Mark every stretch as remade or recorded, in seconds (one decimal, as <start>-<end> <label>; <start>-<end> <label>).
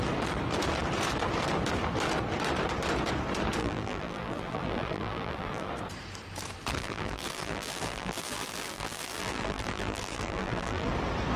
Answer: 0.0-3.6 recorded; 3.6-5.7 remade; 5.7-6.8 recorded; 6.8-10.9 remade; 10.9-11.4 recorded